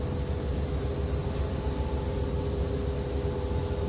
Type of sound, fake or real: real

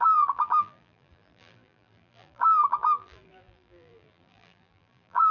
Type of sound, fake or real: fake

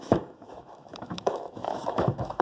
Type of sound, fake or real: fake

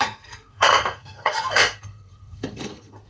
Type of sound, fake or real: fake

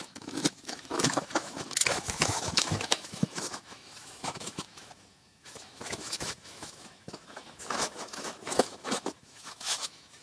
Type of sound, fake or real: fake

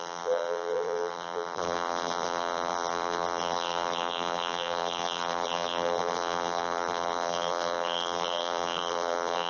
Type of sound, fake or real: fake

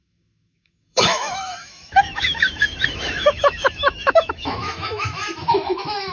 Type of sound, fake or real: fake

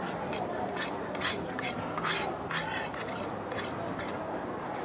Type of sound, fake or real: real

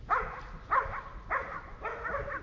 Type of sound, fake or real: real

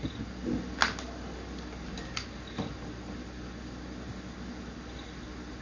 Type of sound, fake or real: real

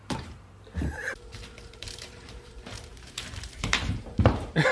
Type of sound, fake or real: fake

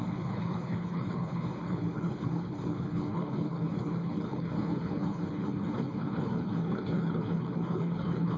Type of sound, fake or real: fake